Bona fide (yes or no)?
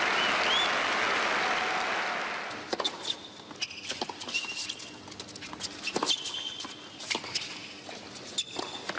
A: yes